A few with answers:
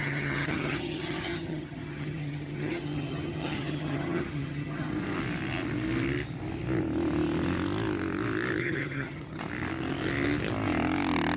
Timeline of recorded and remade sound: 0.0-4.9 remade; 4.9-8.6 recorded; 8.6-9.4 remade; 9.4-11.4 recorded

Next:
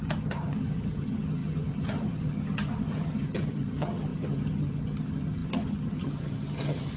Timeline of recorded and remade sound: 0.0-7.0 remade